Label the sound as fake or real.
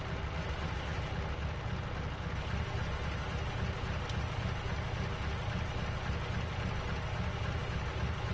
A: real